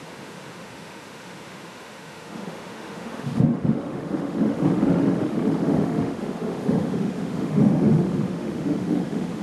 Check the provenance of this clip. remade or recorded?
remade